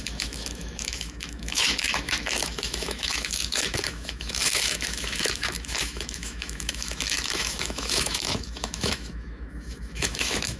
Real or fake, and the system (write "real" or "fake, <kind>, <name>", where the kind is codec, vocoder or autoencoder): fake, autoencoder, DAC-VAE